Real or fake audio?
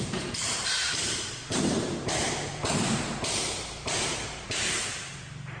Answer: fake